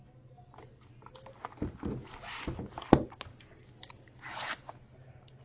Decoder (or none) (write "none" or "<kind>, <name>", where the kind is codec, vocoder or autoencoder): none